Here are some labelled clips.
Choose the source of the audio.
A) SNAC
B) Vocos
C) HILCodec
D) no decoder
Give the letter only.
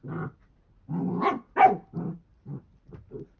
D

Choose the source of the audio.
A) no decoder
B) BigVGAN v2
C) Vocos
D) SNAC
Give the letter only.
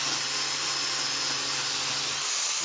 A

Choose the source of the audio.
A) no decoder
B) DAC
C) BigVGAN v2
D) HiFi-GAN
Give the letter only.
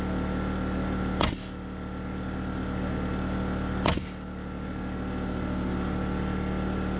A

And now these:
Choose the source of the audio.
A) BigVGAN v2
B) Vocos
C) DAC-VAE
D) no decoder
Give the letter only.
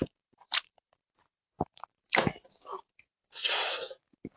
A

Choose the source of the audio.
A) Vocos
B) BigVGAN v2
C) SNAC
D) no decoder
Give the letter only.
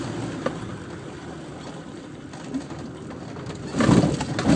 B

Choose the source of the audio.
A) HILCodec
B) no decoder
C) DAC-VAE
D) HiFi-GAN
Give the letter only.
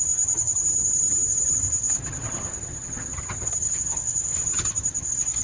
D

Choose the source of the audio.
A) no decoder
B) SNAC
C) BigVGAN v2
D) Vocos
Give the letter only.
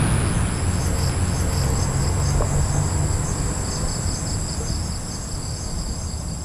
A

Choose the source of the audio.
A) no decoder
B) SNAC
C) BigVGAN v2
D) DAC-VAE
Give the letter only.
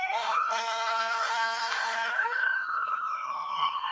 B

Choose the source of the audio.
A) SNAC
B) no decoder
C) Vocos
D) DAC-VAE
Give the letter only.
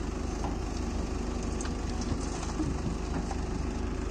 B